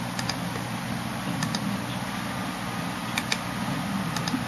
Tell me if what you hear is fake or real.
real